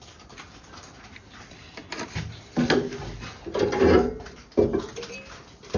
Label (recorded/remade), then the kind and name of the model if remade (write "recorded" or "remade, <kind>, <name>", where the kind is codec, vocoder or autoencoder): recorded